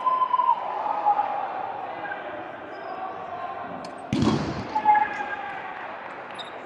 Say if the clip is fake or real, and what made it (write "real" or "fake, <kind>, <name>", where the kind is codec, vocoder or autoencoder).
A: real